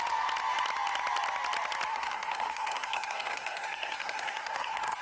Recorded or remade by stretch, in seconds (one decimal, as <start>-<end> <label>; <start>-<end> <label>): 0.0-1.9 recorded; 1.9-5.0 remade